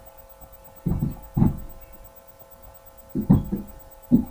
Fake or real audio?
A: real